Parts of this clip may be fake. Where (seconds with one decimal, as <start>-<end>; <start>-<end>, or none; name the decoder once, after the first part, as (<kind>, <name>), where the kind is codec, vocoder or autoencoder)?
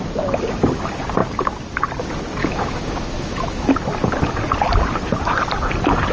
2.4-3.7 (autoencoder, DAC-VAE)